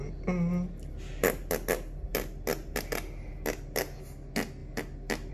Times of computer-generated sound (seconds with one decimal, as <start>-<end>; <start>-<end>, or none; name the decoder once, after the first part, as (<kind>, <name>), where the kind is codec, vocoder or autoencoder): none